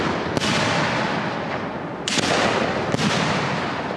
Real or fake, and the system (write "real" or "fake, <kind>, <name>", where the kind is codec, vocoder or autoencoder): real